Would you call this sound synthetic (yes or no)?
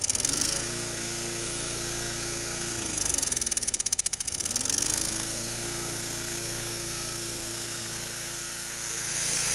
yes